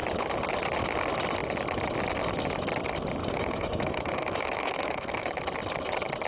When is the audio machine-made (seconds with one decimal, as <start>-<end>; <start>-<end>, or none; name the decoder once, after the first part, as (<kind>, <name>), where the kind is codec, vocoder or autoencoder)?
3.2-5.4 (autoencoder, DAC-VAE)